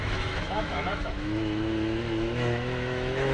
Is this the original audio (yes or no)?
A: no